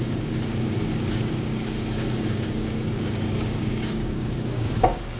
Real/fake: fake